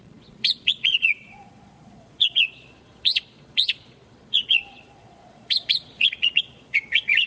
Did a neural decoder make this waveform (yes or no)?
yes